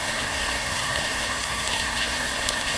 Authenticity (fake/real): fake